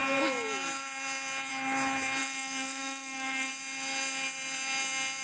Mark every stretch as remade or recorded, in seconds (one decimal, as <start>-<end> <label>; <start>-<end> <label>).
0.0-2.2 recorded; 2.2-3.5 remade; 3.5-5.2 recorded